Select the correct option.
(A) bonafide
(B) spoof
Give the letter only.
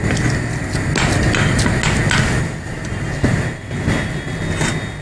A